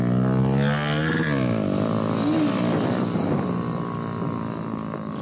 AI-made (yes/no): no